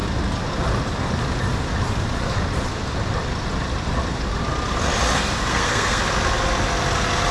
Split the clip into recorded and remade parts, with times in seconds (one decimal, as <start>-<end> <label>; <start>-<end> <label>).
0.0-5.5 recorded; 5.5-6.0 remade; 6.0-7.3 recorded